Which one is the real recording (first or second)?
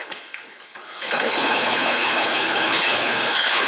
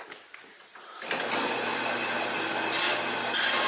second